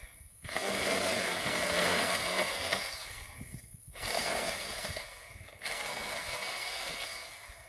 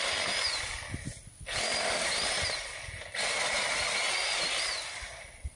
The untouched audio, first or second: second